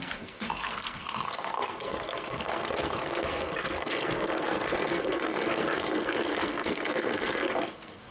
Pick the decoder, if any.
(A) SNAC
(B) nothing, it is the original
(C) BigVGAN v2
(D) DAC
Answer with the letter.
A